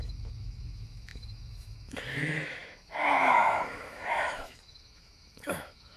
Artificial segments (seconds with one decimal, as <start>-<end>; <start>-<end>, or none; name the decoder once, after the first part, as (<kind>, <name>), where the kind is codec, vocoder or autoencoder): 0.0-6.0 (autoencoder, DAC-VAE)